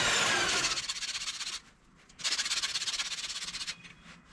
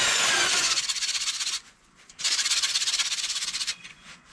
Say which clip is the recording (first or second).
first